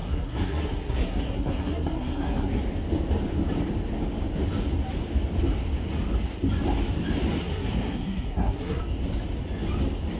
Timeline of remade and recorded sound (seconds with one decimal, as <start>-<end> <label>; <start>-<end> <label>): 0.0-2.6 remade; 2.6-7.4 recorded; 7.4-8.8 remade; 8.8-10.2 recorded